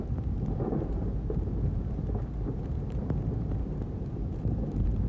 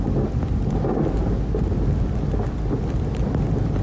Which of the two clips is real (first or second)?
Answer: second